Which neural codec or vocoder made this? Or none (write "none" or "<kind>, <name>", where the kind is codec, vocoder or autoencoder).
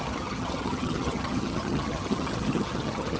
vocoder, HiFi-GAN